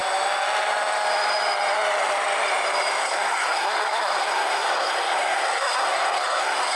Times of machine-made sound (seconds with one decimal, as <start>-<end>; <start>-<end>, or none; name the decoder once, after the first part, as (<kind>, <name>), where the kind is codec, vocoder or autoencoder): 3.0-6.8 (codec, SNAC)